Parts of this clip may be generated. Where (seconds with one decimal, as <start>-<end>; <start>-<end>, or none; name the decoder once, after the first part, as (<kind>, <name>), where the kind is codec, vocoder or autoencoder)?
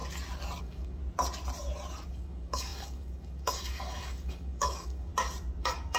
0.6-1.0 (codec, DAC); 2.1-5.1; 5.6-6.0